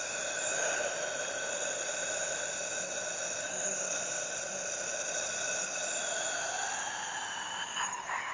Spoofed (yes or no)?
no